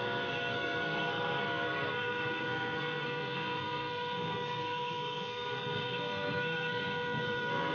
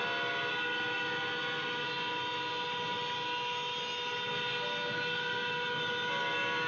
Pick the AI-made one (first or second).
first